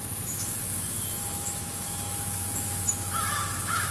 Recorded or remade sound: remade